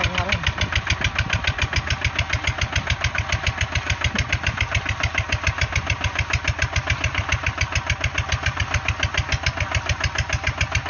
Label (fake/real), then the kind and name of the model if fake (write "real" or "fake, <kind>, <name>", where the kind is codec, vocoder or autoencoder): real